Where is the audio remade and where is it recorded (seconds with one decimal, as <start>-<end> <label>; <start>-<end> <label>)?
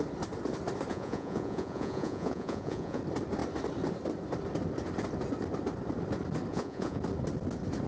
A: 0.0-0.9 recorded; 0.9-3.0 remade; 3.0-6.5 recorded; 6.5-7.0 remade; 7.0-7.9 recorded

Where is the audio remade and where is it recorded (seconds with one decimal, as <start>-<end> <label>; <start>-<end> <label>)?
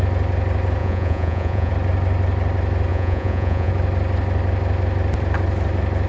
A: 0.0-0.8 recorded; 0.8-1.7 remade; 1.7-2.9 recorded; 2.9-3.7 remade; 3.7-6.1 recorded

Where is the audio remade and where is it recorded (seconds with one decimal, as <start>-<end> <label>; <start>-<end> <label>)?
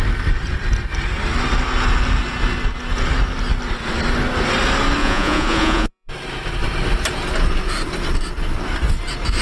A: 0.0-5.0 recorded; 5.0-6.1 remade; 6.1-9.4 recorded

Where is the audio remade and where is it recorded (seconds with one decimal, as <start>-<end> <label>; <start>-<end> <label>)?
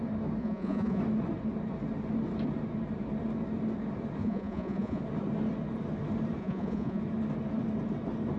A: 0.0-0.4 recorded; 0.4-1.0 remade; 1.0-4.2 recorded; 4.2-5.0 remade; 5.0-6.4 recorded; 6.4-7.0 remade; 7.0-8.4 recorded